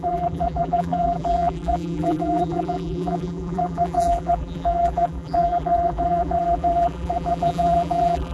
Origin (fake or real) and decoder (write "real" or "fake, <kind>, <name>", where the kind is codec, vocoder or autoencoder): fake, vocoder, BigVGAN v2